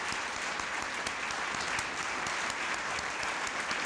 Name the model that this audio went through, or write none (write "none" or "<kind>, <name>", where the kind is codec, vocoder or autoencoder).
vocoder, BigVGAN v2